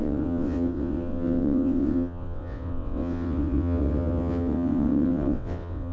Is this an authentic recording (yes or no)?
no